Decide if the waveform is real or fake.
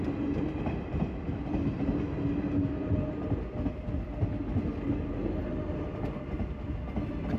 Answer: real